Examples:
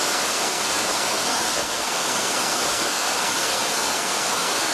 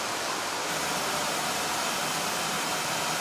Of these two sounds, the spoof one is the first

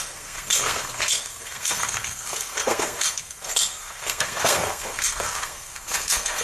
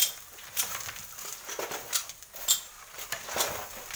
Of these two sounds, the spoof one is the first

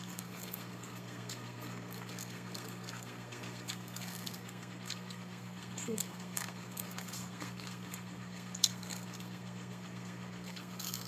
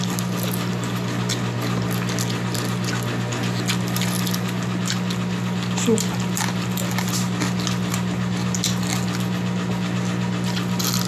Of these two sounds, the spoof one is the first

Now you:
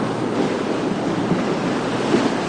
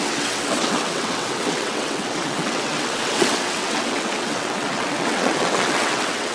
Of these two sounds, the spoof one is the second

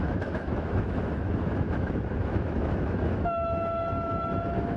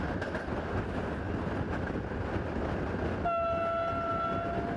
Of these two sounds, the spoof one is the first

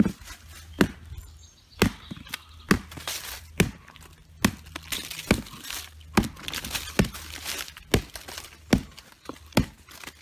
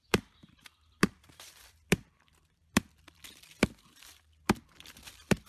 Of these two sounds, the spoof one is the second